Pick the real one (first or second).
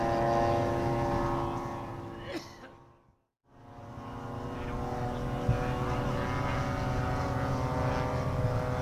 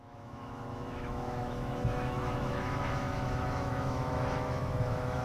first